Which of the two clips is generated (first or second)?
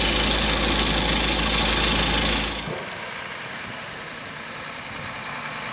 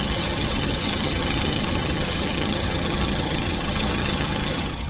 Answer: second